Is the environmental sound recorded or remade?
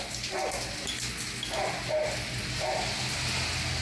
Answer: recorded